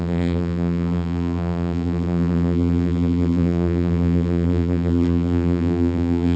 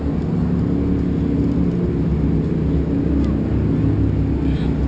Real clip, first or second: second